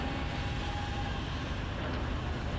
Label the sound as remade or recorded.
recorded